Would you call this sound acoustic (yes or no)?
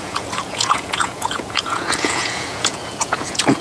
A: no